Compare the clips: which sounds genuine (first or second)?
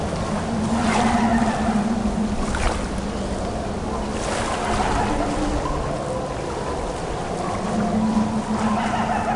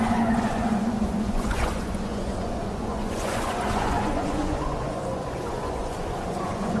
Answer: first